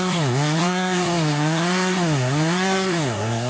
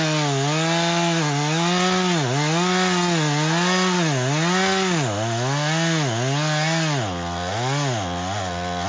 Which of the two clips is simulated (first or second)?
first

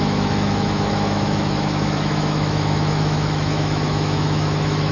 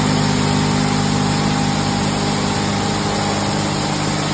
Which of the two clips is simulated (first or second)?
first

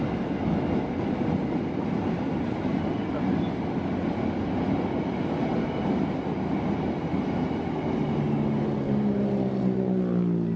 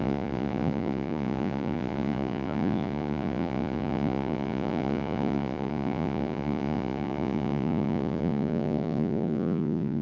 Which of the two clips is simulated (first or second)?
second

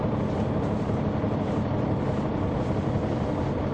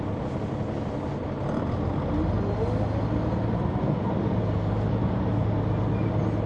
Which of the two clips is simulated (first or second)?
first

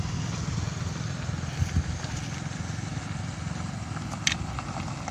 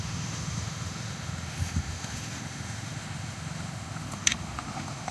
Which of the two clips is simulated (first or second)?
second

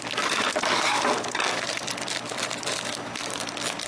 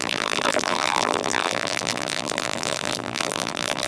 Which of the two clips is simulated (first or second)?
second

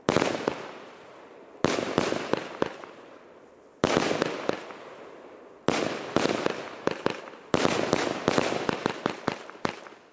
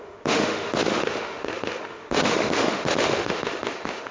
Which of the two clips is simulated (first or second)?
second